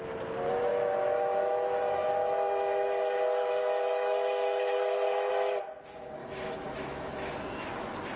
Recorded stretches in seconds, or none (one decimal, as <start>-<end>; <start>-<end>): 0.0-0.7; 5.3-6.2; 7.3-8.2